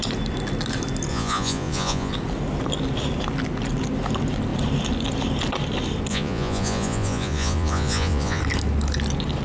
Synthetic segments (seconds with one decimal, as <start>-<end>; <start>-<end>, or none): 1.1-2.1; 6.1-8.4